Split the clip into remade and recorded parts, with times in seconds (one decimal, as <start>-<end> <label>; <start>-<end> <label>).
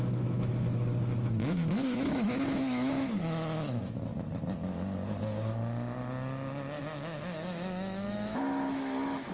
0.0-4.1 remade; 4.1-6.8 recorded; 6.8-9.3 remade